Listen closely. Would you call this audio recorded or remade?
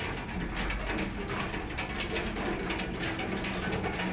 recorded